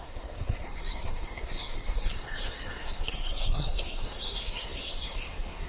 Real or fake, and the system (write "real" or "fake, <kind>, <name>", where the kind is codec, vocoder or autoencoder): fake, codec, SNAC